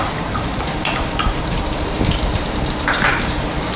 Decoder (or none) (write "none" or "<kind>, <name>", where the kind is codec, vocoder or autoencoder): vocoder, BigVGAN v2